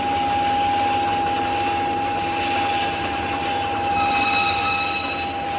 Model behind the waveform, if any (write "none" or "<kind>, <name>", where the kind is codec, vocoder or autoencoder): none